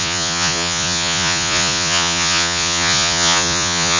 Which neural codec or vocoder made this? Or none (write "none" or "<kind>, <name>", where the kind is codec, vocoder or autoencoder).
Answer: vocoder, Vocos